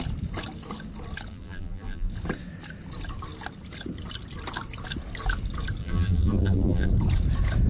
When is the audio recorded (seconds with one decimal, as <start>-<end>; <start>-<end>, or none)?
0.0-1.3; 2.1-5.8; 6.9-7.7